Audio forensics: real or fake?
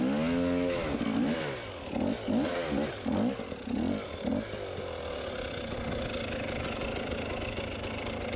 real